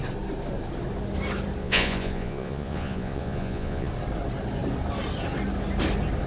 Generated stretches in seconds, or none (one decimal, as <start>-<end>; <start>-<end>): 1.6-3.9

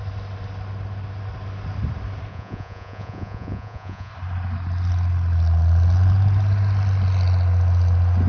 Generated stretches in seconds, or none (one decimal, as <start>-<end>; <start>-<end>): 2.3-4.1

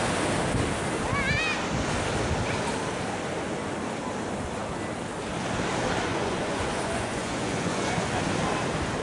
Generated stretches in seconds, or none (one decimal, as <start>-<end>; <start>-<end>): 6.1-8.1

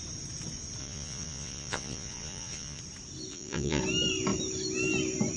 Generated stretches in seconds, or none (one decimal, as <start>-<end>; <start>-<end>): 0.8-2.8; 3.3-3.8

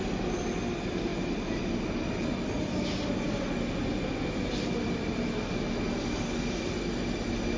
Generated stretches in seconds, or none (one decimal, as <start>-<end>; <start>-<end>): none